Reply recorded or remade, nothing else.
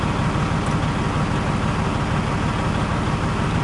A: recorded